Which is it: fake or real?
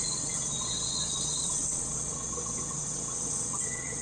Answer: fake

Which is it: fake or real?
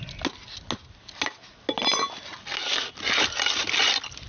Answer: real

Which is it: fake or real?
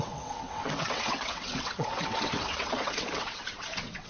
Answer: fake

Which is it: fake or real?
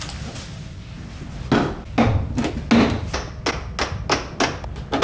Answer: real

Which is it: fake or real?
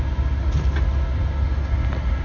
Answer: real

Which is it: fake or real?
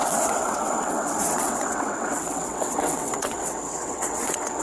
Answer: fake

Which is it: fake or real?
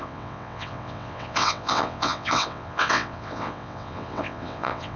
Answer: fake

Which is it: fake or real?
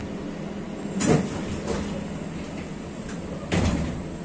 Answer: real